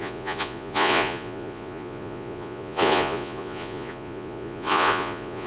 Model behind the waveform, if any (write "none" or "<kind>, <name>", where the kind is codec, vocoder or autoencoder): vocoder, Vocos